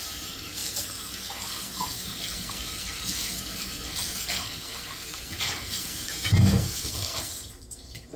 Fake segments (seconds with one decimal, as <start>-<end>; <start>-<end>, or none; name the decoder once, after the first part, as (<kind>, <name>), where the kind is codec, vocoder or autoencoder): 0.0-8.2 (codec, SNAC)